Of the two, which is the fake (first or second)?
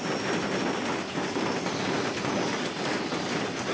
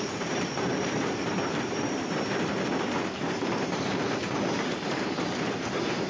second